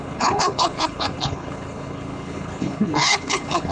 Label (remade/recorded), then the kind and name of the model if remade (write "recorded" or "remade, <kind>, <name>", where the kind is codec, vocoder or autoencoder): remade, codec, HILCodec